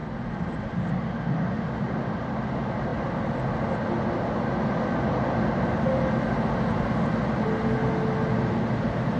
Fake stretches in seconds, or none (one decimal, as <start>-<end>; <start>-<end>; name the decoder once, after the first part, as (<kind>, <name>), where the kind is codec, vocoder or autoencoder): none